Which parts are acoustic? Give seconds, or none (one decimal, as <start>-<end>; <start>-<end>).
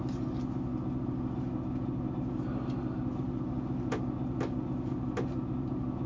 0.0-6.1